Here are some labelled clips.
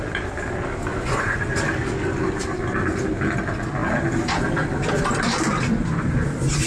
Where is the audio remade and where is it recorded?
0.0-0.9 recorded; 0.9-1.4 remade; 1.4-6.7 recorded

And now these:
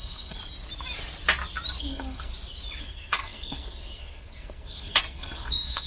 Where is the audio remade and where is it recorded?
0.0-0.4 remade; 0.4-1.8 recorded; 1.8-2.3 remade; 2.3-2.8 recorded; 2.8-5.9 remade

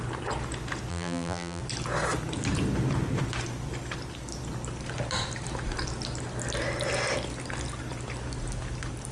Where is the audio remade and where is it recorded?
0.0-0.9 recorded; 0.9-1.6 remade; 1.6-9.1 recorded

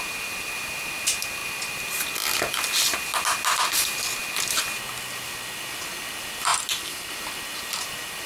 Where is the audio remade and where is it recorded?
0.0-8.3 recorded

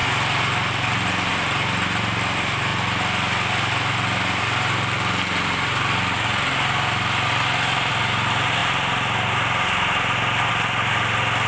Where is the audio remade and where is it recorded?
0.0-11.5 recorded

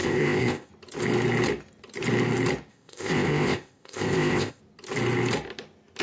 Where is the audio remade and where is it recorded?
0.0-0.7 remade; 0.7-2.7 recorded; 2.7-4.6 remade; 4.6-6.0 recorded

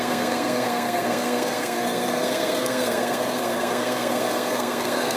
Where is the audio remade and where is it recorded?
0.0-5.2 remade

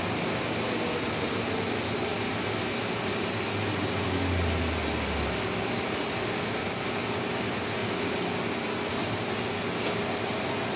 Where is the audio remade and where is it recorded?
0.0-10.8 recorded